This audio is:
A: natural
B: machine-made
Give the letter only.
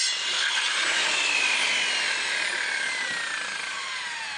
A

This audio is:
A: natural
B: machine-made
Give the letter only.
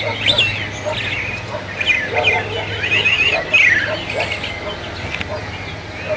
A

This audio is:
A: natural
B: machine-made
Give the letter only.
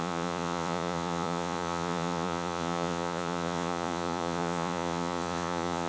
B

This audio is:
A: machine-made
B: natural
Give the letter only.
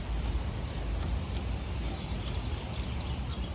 B